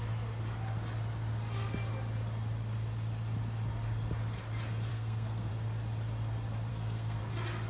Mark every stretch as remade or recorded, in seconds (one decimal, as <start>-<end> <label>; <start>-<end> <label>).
0.0-4.9 recorded; 4.9-5.5 remade; 5.5-6.7 recorded; 6.7-7.2 remade; 7.2-7.7 recorded